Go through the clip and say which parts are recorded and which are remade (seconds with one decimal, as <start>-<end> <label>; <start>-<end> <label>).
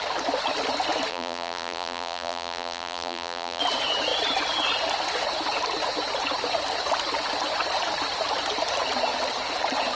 0.0-1.1 recorded; 1.1-3.6 remade; 3.6-9.9 recorded